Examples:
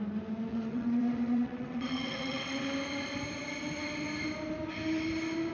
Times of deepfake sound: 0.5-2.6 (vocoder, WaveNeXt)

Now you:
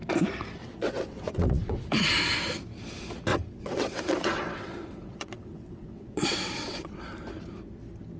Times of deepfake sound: 0.6-2.0 (vocoder, WaveNeXt); 3.3-7.0

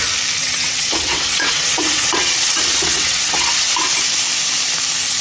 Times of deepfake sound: 0.4-3.5 (vocoder, WaveNeXt)

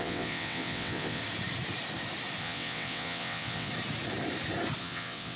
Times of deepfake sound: 0.0-1.2 (vocoder, WaveNeXt); 2.4-3.7; 4.8-5.4

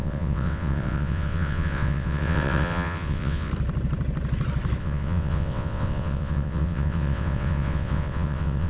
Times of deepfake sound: 0.0-3.5 (vocoder, WaveNeXt); 4.8-8.7

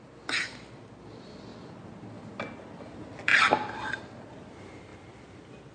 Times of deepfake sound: none

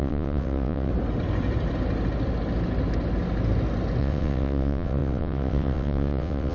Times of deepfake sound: 0.0-0.9 (vocoder, WaveNeXt); 4.0-6.5

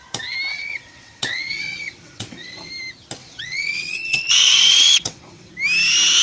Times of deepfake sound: 0.5-2.7 (vocoder, WaveNeXt); 3.2-5.5